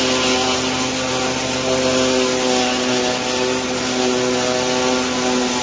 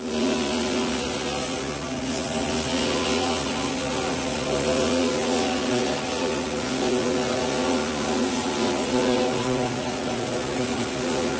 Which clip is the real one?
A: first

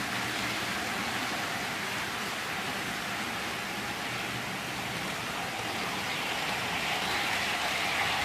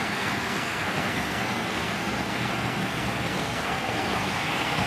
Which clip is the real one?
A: first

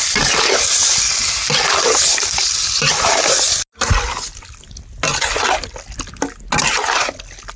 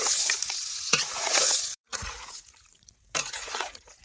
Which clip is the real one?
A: first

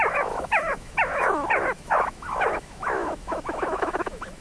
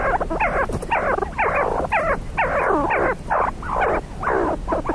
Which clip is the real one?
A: second